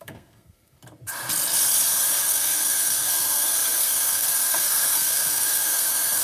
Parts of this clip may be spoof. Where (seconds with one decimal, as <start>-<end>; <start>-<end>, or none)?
0.0-0.8; 2.2-6.2